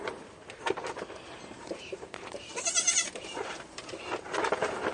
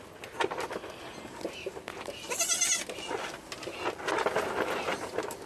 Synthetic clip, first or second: first